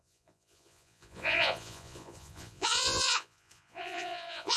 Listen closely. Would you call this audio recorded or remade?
remade